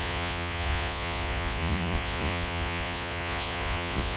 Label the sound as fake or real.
fake